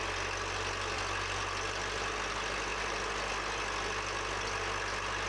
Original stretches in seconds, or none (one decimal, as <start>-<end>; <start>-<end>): 0.0-5.3